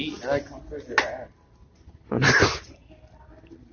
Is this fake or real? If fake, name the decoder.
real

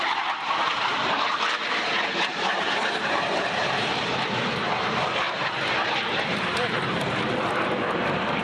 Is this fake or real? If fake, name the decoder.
fake, vocoder, BigVGAN v2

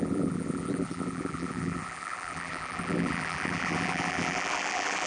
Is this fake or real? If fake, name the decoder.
fake, vocoder, BigVGAN v2